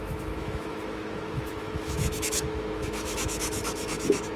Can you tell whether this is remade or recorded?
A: remade